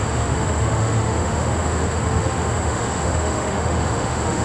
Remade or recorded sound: remade